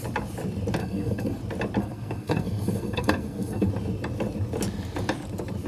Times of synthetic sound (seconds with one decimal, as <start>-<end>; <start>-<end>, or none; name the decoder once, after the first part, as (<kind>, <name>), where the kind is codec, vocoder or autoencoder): 0.8-1.4 (codec, SNAC); 1.8-3.7